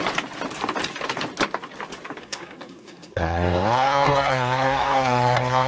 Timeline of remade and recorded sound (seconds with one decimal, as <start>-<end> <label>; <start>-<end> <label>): 0.0-2.2 recorded; 2.2-5.7 remade